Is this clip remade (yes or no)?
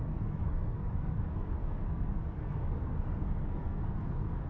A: yes